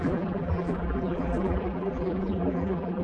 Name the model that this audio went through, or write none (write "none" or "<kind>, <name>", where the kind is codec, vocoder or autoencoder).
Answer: vocoder, BigVGAN v2